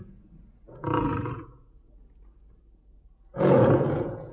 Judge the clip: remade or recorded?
remade